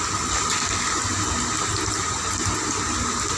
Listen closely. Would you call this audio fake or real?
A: real